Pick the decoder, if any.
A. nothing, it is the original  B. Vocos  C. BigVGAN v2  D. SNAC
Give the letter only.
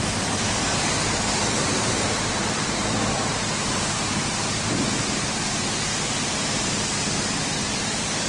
C